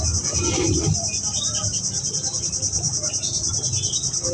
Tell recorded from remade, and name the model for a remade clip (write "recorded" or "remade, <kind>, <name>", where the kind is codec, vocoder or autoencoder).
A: recorded